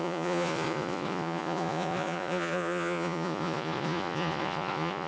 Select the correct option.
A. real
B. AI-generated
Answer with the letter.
B